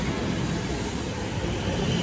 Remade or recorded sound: recorded